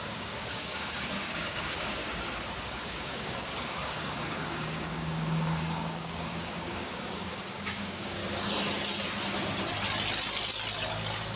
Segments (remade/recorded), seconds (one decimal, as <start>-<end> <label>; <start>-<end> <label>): 0.0-2.0 remade; 2.0-2.6 recorded; 2.6-8.2 remade; 8.2-11.4 recorded